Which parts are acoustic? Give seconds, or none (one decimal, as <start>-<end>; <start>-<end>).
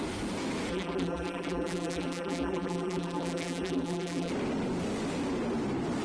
0.0-0.7; 4.3-6.0